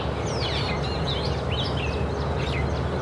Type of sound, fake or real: real